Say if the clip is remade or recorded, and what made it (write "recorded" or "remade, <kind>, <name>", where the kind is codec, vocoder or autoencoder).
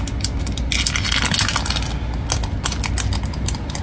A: recorded